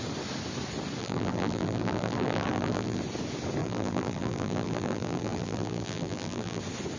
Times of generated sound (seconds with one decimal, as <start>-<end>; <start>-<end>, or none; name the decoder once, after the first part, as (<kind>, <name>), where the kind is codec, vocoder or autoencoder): 1.0-3.0 (vocoder, BigVGAN v2); 3.6-6.6